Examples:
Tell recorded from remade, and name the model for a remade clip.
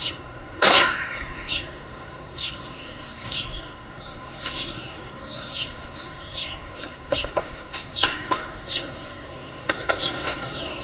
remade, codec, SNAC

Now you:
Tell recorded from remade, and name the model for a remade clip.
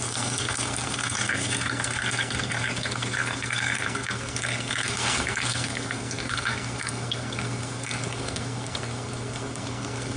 remade, codec, SNAC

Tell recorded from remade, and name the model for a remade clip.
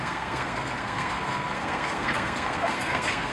remade, codec, SNAC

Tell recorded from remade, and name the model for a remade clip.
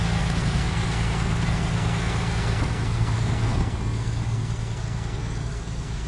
remade, codec, SNAC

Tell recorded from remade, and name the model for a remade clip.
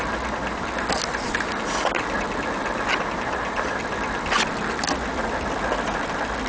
recorded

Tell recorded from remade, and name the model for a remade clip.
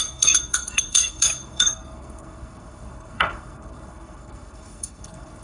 remade, codec, SNAC